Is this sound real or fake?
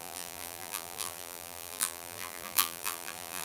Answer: fake